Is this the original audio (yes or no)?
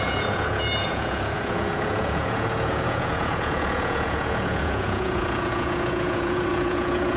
no